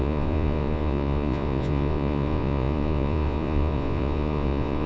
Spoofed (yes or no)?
yes